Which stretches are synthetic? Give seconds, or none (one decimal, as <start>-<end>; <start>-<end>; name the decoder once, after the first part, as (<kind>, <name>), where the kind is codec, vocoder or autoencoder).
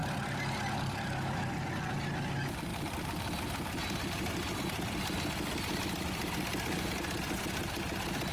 none